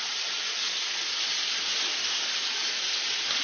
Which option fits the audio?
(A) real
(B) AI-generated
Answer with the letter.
A